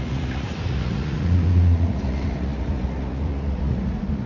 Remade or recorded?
remade